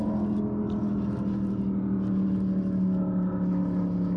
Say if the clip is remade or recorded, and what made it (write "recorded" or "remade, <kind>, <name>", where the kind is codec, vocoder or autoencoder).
recorded